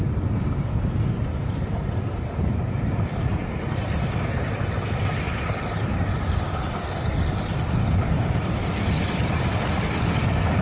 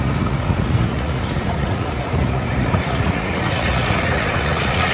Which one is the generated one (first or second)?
second